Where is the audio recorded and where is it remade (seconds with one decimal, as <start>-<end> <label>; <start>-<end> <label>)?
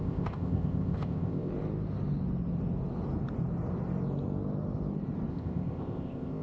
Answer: 0.0-1.5 remade; 1.5-5.3 recorded; 5.3-6.4 remade